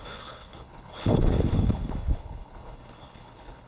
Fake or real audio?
fake